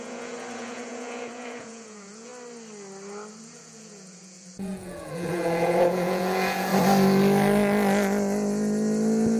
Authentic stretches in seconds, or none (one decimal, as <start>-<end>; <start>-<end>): 2.3-3.4; 6.7-9.4